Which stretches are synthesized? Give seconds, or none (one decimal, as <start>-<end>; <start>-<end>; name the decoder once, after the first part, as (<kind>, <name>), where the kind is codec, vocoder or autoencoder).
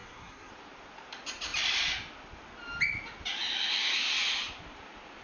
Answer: 0.0-0.5 (codec, SNAC)